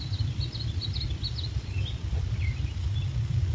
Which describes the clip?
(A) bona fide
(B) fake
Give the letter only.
A